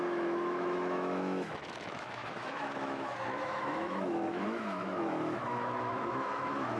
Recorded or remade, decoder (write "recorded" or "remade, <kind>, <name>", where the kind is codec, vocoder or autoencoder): remade, autoencoder, DAC-VAE